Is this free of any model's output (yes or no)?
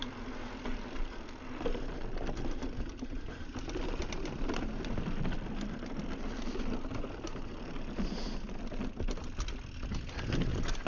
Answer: yes